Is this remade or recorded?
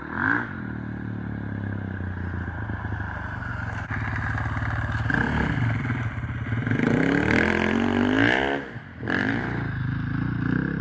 recorded